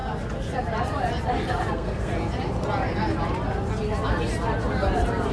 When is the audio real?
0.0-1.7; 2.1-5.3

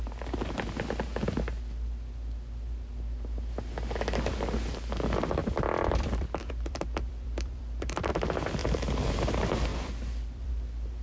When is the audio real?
0.0-5.4; 8.1-8.6; 9.1-9.7; 10.5-11.0

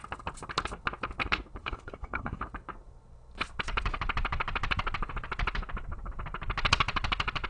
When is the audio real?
0.0-1.6; 2.4-7.5

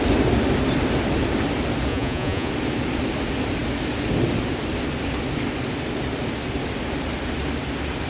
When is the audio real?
0.0-1.9; 2.5-8.1